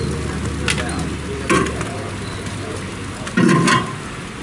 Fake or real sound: real